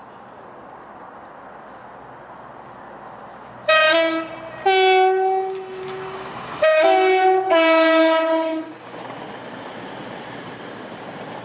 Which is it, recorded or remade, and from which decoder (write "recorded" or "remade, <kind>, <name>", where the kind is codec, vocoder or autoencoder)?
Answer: recorded